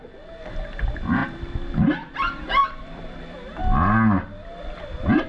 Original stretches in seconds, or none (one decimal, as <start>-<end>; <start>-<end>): 0.0-2.6; 3.2-5.3